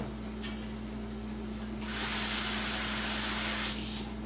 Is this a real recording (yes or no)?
yes